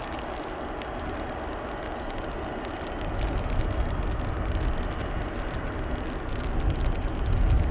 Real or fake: real